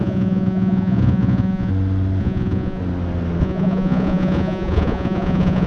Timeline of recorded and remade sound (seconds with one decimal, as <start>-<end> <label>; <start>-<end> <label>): 0.0-1.7 remade; 1.7-2.2 recorded; 2.2-2.8 remade; 2.8-3.4 recorded; 3.4-5.7 remade